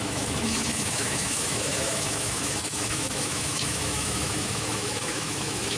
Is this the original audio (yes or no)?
no